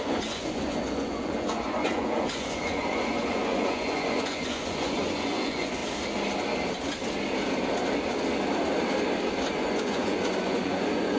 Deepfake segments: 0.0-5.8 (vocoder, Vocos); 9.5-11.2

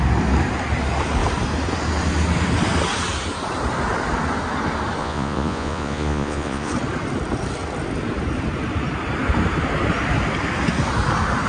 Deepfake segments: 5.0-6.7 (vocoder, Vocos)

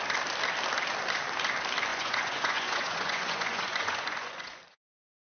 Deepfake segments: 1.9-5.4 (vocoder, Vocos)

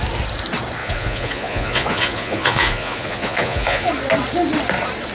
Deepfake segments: 0.8-3.9 (vocoder, Vocos)